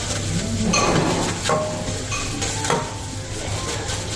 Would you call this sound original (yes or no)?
yes